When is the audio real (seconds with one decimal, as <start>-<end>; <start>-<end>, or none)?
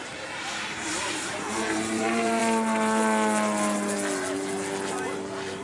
2.4-4.9